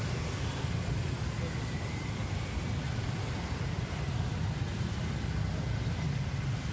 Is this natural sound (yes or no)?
yes